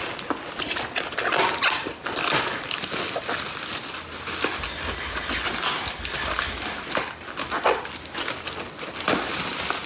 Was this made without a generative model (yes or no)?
yes